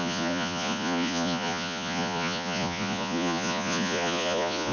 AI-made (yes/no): yes